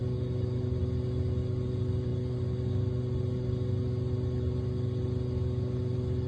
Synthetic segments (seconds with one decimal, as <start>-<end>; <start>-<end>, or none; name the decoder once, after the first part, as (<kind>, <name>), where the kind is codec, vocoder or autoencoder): none